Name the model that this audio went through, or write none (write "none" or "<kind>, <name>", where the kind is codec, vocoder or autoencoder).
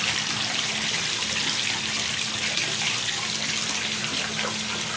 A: none